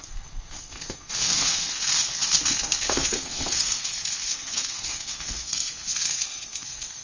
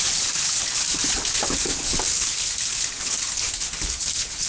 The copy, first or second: first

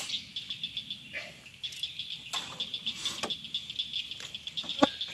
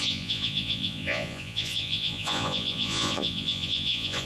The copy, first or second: second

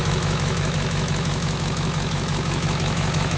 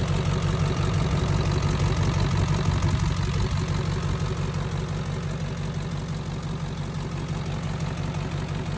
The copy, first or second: first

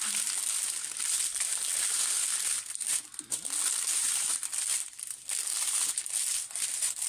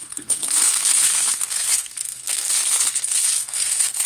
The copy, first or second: second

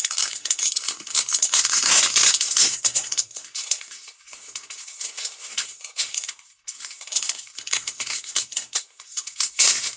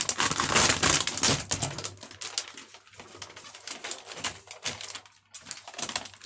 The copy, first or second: first